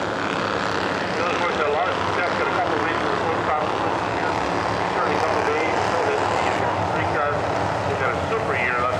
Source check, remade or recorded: recorded